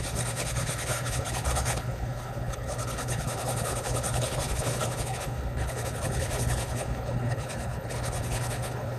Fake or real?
fake